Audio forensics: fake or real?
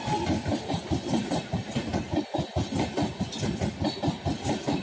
real